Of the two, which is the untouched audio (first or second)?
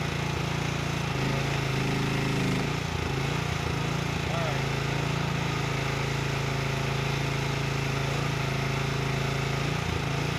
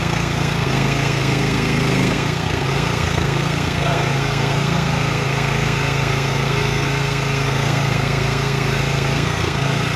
first